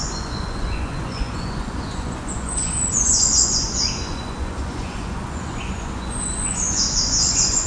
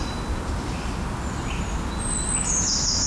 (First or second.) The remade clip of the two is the first